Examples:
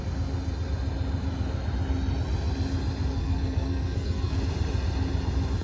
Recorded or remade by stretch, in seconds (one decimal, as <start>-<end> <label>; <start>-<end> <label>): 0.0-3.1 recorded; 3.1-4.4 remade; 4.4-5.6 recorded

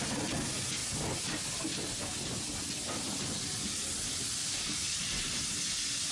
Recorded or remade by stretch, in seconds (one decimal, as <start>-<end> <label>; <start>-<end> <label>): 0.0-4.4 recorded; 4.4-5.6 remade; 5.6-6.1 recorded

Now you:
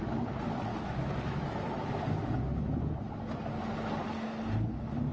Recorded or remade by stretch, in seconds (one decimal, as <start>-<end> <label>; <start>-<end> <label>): 0.0-0.7 recorded; 0.7-1.9 remade; 1.9-5.1 recorded